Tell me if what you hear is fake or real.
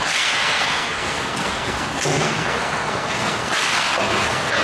fake